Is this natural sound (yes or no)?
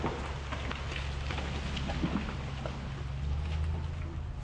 yes